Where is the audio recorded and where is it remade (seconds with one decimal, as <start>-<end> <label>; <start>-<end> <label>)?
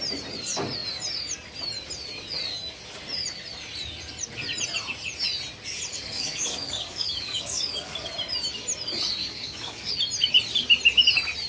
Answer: 0.0-5.9 recorded; 5.9-8.1 remade; 8.1-9.2 recorded; 9.2-9.9 remade; 9.9-11.5 recorded